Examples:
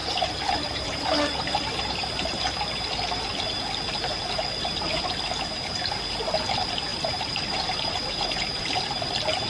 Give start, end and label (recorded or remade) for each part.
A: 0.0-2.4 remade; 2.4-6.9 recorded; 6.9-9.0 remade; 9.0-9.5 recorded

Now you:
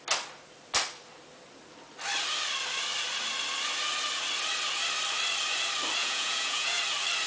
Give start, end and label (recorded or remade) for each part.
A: 0.0-6.0 recorded; 6.0-6.8 remade; 6.8-7.3 recorded